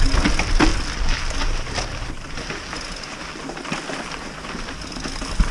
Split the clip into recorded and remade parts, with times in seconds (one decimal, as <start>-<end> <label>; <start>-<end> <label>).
0.0-5.5 recorded

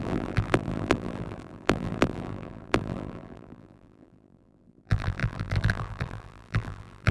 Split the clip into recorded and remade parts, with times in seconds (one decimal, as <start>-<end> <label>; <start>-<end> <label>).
0.0-7.1 remade

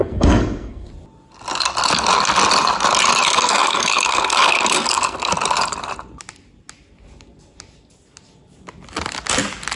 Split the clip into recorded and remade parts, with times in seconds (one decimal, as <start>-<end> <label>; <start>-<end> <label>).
0.0-0.9 remade; 0.9-3.3 recorded; 3.3-5.3 remade; 5.3-9.8 recorded

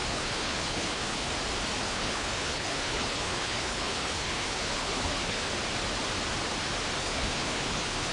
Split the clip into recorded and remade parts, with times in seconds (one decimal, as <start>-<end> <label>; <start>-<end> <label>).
0.0-1.3 remade; 1.3-1.8 recorded; 1.8-5.5 remade; 5.5-7.0 recorded; 7.0-8.1 remade

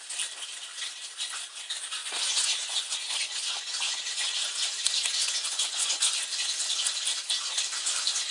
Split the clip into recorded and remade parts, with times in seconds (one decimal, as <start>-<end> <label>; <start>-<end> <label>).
0.0-2.0 recorded; 2.0-6.1 remade; 6.1-8.3 recorded

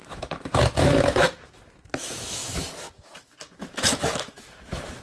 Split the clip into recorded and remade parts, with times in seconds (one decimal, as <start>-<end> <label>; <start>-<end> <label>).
0.0-5.0 remade

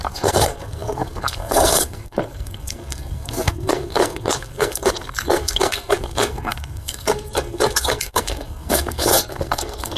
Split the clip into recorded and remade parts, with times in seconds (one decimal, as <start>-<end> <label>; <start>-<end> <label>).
0.0-10.0 remade